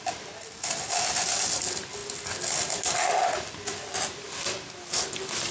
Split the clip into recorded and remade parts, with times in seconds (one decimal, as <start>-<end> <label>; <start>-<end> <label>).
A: 0.0-5.5 recorded